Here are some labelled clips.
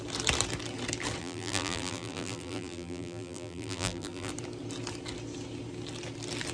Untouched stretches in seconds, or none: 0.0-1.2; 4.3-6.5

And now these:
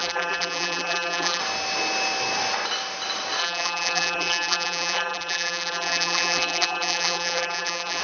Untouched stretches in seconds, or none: 1.4-3.4

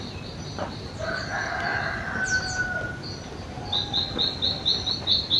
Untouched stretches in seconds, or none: 0.0-5.4

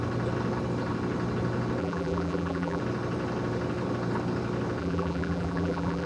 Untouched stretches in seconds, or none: 0.0-1.8; 2.8-4.8

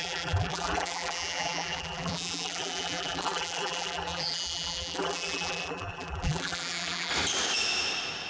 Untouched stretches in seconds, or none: 7.1-8.3

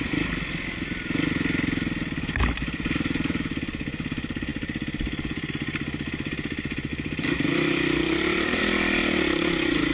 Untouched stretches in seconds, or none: 0.0-6.9; 8.6-9.9

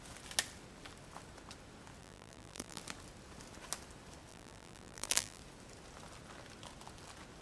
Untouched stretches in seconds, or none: 0.0-2.0; 2.8-4.3; 5.4-7.4

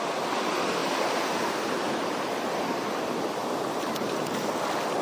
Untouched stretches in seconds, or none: 0.0-3.4; 3.9-5.0